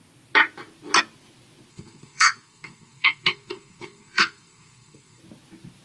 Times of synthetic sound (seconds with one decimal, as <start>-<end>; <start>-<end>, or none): 1.7-5.2